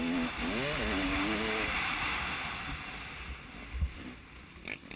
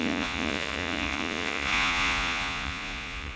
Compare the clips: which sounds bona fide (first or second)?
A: first